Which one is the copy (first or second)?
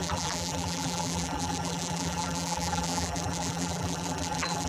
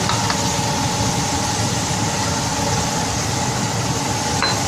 first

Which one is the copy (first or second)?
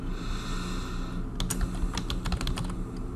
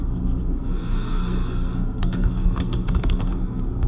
second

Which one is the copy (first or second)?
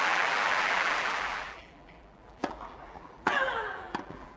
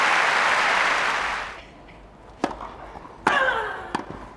first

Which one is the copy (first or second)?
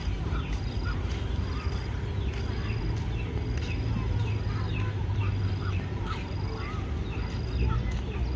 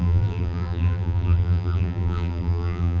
second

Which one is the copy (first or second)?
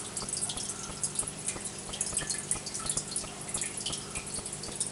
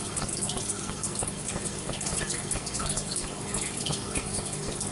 second